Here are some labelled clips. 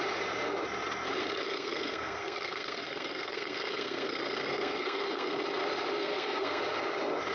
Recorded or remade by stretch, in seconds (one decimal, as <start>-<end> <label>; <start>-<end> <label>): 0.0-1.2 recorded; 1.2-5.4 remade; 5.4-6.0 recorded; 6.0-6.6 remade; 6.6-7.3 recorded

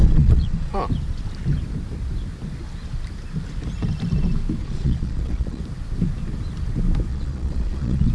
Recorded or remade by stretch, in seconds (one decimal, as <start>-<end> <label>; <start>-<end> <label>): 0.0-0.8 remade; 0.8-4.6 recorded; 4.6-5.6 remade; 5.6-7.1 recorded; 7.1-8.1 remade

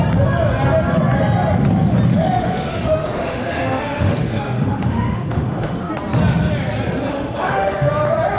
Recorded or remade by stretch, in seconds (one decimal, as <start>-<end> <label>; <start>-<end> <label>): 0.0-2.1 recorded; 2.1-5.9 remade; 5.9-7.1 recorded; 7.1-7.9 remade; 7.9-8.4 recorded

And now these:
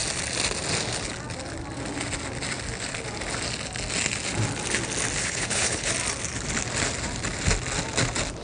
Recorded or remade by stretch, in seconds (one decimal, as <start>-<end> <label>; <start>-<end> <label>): 0.0-5.2 recorded; 5.2-5.9 remade; 5.9-8.4 recorded

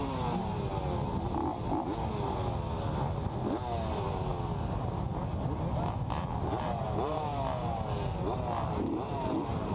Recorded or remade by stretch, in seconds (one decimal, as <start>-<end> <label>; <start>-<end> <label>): 0.0-0.7 remade; 0.7-3.9 recorded; 3.9-4.3 remade; 4.3-6.8 recorded; 6.8-7.3 remade; 7.3-8.7 recorded; 8.7-9.7 remade